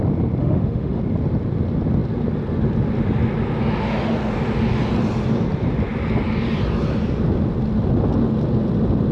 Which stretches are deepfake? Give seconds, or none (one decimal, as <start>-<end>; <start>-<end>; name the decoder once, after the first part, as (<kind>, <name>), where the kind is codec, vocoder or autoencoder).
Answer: 0.4-1.0 (autoencoder, DAC-VAE)